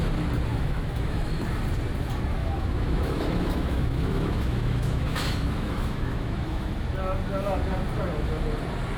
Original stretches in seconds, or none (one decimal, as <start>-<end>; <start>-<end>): 0.0-0.5; 1.4-2.4; 6.7-9.0